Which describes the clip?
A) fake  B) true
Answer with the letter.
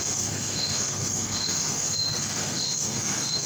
A